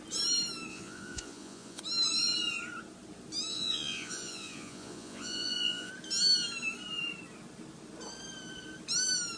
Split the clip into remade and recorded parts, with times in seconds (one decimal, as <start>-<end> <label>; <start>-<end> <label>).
0.0-0.7 recorded; 0.7-1.8 remade; 1.8-3.5 recorded; 3.5-5.9 remade; 5.9-9.4 recorded

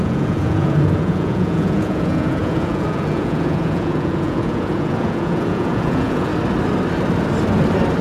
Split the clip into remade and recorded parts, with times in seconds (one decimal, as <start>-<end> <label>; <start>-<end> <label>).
0.0-6.3 remade; 6.3-8.0 recorded

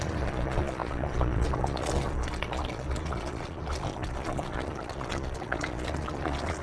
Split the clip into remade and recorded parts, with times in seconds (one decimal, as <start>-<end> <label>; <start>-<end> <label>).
0.0-6.6 remade

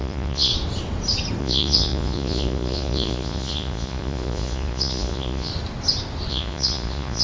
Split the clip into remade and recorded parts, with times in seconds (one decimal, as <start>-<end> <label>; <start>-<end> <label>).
0.0-0.5 remade; 0.5-1.4 recorded; 1.4-5.5 remade; 5.5-6.3 recorded; 6.3-7.2 remade

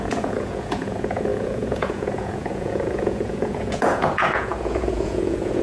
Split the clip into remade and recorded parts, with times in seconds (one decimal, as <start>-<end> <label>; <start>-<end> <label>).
0.0-5.6 remade